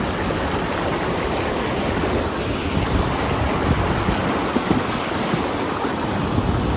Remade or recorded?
recorded